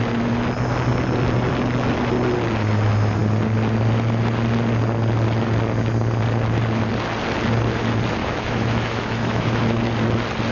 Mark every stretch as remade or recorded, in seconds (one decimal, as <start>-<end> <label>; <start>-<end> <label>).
0.0-8.2 recorded; 8.2-9.6 remade; 9.6-10.5 recorded